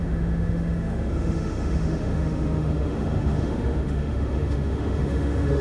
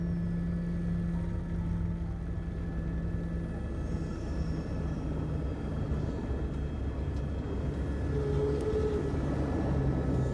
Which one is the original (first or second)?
second